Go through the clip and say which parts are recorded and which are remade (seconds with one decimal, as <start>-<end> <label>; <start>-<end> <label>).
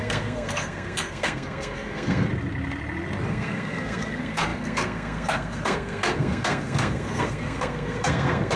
0.0-2.3 remade; 2.3-3.3 recorded; 3.3-8.6 remade